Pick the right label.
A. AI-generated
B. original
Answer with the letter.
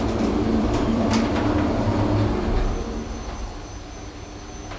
A